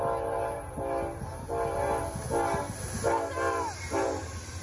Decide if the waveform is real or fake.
real